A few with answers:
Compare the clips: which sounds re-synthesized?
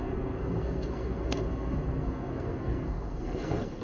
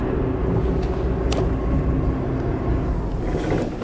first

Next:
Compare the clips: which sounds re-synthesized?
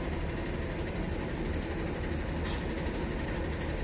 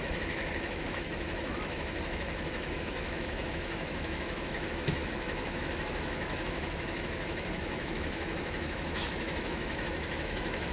second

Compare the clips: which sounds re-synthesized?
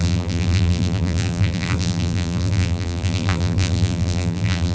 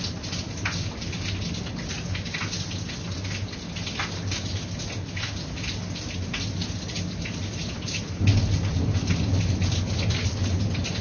first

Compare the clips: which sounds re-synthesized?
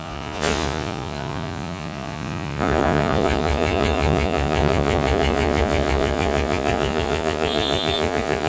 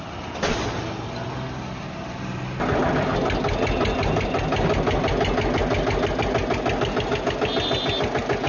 first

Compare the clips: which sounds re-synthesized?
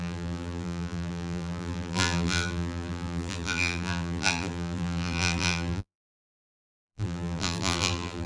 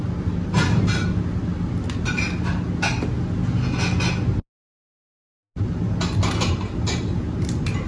first